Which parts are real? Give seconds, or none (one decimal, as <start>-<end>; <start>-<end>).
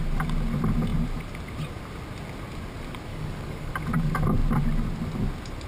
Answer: 0.0-3.1; 3.7-5.7